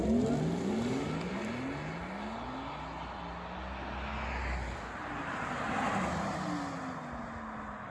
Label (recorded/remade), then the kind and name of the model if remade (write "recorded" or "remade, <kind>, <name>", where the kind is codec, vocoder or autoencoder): recorded